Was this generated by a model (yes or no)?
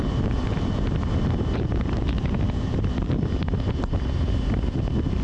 yes